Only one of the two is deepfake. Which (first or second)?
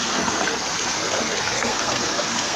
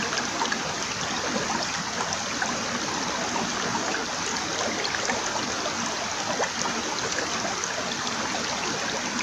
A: first